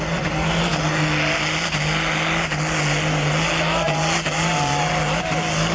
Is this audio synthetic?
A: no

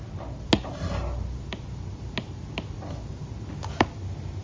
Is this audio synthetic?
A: no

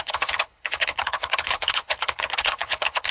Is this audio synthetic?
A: yes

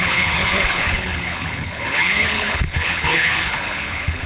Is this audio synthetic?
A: yes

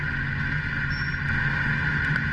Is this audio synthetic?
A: no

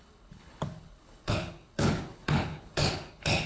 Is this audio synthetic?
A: yes